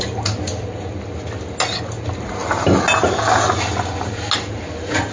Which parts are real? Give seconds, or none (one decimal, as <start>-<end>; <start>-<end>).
0.0-5.1